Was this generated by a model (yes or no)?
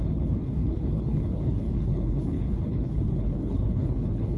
yes